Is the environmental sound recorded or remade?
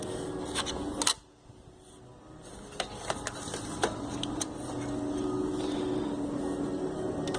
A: recorded